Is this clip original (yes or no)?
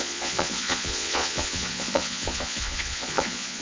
no